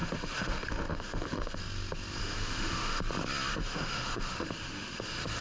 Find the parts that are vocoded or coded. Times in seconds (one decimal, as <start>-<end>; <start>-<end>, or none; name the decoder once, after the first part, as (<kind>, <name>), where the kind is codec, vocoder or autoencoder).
0.0-1.6 (autoencoder, DAC-VAE); 2.2-3.0; 3.5-5.4